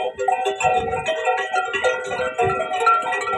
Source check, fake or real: real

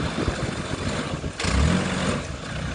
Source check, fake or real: real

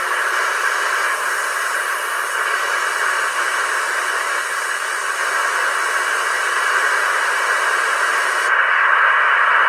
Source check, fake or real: real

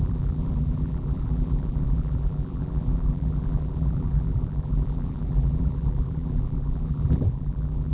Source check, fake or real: fake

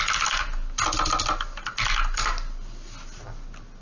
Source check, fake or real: real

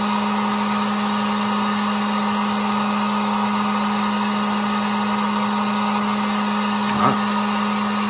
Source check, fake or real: real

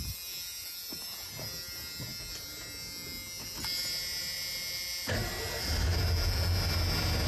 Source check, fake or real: real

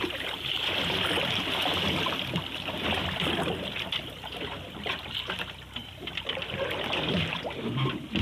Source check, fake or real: real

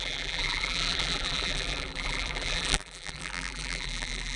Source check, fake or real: fake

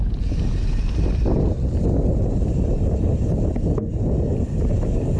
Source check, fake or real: real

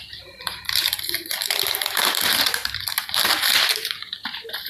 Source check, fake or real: fake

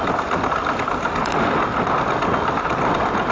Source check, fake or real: real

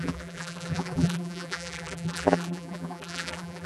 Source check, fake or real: fake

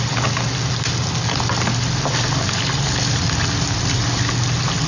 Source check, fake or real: real